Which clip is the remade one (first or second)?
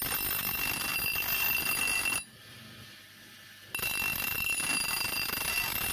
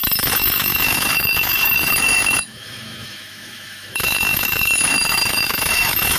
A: second